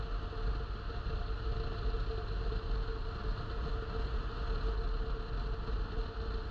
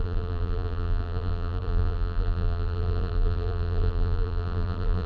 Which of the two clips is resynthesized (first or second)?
second